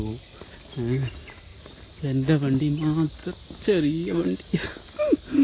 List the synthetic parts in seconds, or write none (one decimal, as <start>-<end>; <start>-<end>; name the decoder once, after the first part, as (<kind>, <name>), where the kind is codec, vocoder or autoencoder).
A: none